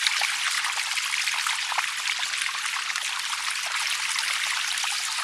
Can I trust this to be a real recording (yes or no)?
yes